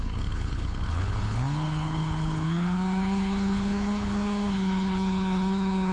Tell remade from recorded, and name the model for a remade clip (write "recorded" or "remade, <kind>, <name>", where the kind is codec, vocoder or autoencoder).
remade, codec, HILCodec